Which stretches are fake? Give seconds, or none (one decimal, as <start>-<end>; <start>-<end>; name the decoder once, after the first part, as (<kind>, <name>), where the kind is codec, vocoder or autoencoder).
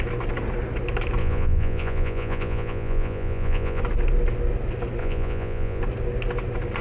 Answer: 1.2-3.8 (vocoder, Vocos); 5.0-5.8